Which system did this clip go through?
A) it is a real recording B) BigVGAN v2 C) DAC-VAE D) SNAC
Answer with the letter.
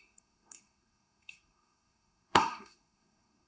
D